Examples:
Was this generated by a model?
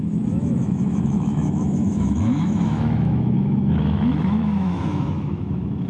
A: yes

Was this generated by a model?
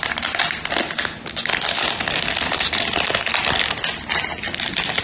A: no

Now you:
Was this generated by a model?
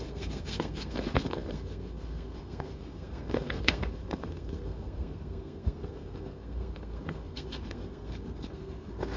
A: yes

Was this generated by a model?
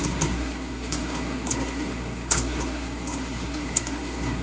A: yes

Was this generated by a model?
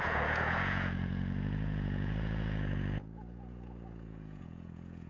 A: yes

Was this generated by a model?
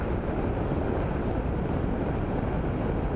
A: no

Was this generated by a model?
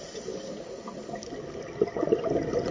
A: no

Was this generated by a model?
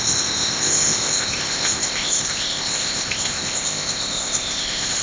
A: yes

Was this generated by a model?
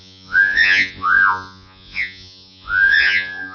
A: yes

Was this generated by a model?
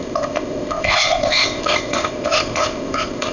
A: yes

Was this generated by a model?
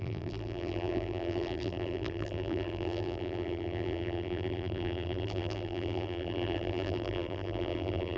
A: yes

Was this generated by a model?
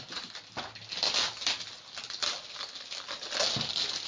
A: no